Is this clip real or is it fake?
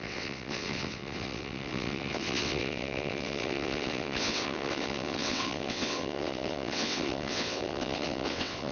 fake